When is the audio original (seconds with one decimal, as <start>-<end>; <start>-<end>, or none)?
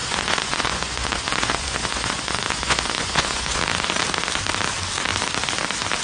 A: 3.6-6.0